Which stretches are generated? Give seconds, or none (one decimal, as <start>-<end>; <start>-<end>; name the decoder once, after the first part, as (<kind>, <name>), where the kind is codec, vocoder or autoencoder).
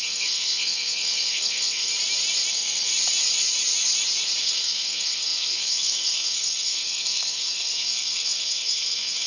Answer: 0.0-1.9 (codec, SNAC); 2.5-2.9; 4.4-9.3